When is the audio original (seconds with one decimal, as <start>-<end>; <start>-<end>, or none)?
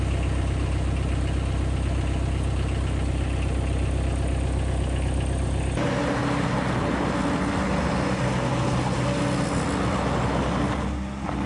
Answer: 0.0-11.5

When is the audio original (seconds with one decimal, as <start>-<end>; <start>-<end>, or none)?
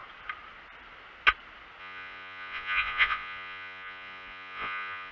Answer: 0.0-1.8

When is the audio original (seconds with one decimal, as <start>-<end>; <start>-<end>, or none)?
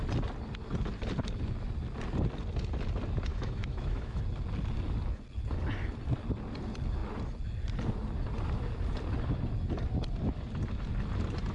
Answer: 0.0-3.3; 4.2-11.5